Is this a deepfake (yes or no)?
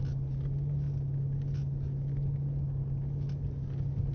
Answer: no